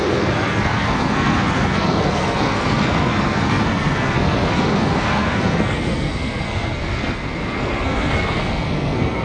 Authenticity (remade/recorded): remade